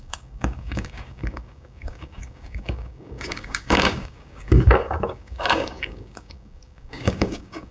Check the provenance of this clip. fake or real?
fake